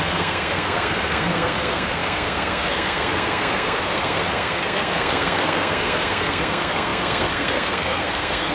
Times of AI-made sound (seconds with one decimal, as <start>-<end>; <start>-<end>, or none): 0.0-8.5